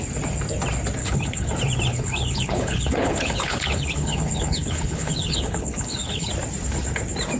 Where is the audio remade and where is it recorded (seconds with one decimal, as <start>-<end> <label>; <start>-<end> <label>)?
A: 0.0-1.0 recorded; 1.0-1.5 remade; 1.5-1.9 recorded; 1.9-6.3 remade; 6.3-7.4 recorded